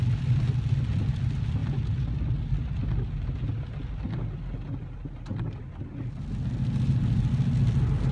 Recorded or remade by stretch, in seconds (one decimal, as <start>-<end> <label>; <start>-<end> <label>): 0.0-8.1 recorded